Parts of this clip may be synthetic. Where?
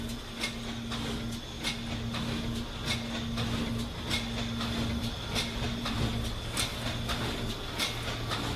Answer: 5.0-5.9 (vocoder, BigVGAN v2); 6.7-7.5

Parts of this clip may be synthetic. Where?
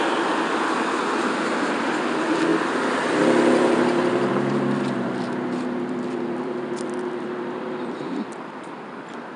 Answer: 0.0-9.4 (vocoder, BigVGAN v2)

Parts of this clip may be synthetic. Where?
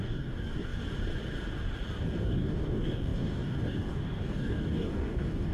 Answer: 0.0-0.8 (codec, DAC); 2.2-5.5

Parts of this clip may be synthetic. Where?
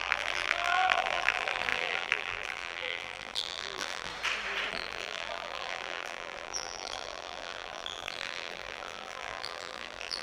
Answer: 0.0-4.1 (vocoder, BigVGAN v2); 4.7-10.2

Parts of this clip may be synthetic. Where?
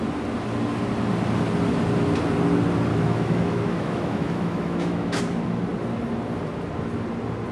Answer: 2.9-5.2 (autoencoder, DAC-VAE)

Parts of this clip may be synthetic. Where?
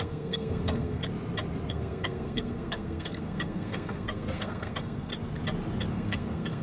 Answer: 0.0-1.0 (codec, SNAC); 1.7-5.1; 5.9-6.6